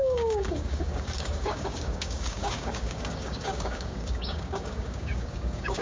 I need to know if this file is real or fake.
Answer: fake